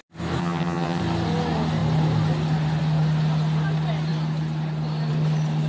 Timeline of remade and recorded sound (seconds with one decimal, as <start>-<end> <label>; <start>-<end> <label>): 0.0-0.4 recorded; 0.4-1.0 remade; 1.0-5.7 recorded